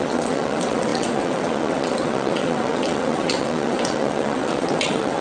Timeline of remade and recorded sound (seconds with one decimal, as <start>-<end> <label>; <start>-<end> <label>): 0.0-5.2 remade